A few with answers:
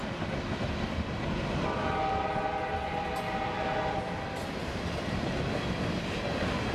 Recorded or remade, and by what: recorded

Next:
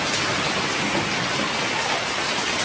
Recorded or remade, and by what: recorded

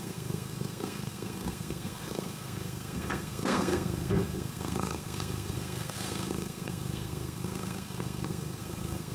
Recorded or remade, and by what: remade, codec, SNAC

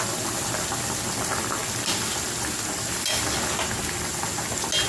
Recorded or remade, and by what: recorded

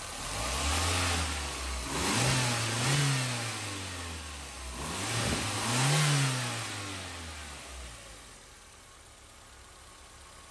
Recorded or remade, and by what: recorded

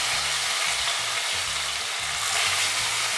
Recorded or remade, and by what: recorded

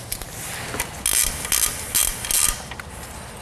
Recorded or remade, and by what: recorded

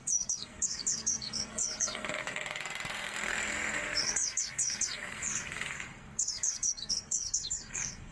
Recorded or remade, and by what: remade, codec, SNAC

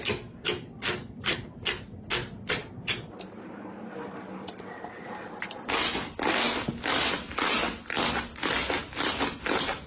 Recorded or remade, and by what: recorded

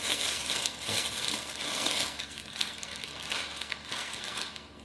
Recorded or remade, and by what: remade, codec, SNAC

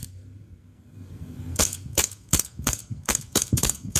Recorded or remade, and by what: remade, codec, SNAC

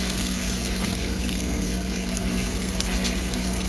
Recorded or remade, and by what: remade, codec, SNAC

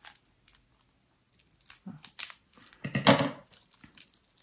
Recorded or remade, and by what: recorded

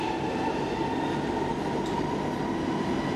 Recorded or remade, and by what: recorded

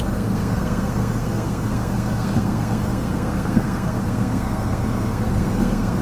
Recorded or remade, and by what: remade, codec, SNAC